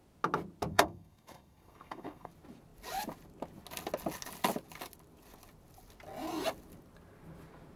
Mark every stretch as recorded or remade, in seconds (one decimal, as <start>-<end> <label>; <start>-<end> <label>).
0.0-0.7 recorded; 0.7-2.3 remade; 2.3-7.8 recorded